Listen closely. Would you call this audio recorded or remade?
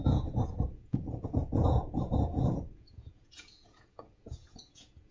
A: remade